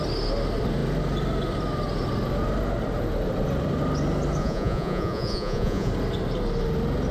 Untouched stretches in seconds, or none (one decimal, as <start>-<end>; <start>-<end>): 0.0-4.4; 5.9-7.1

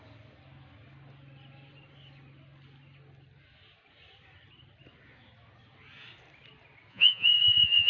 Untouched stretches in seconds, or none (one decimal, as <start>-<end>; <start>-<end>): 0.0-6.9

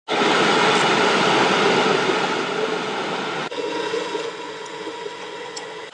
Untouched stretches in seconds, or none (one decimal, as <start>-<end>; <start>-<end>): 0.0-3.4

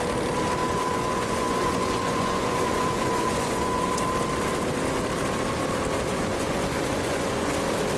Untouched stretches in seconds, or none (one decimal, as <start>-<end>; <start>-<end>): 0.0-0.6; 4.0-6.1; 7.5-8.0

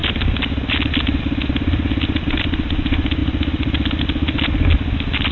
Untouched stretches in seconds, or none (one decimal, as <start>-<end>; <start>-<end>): 0.0-5.3

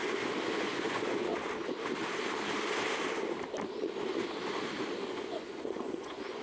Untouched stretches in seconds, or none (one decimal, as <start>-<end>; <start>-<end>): 0.0-0.5; 1.3-5.1

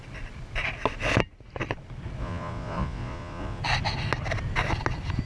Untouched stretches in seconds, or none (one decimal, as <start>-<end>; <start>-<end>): 0.0-2.2; 3.6-5.3